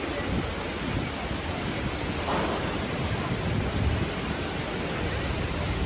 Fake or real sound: real